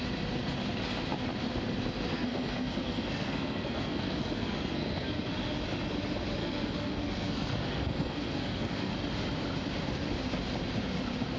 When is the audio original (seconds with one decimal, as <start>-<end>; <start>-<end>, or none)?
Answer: 0.0-2.1; 5.3-6.4; 8.9-11.4